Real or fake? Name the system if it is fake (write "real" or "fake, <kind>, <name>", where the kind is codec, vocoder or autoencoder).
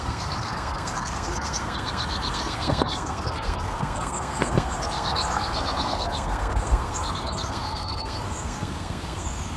fake, codec, SNAC